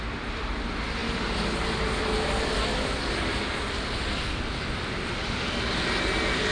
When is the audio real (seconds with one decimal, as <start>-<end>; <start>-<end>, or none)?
0.0-6.5